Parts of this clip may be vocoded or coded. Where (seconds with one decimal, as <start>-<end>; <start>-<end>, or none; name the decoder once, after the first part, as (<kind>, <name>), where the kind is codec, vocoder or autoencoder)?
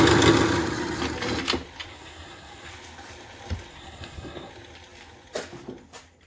1.9-2.7 (codec, SNAC); 3.7-4.5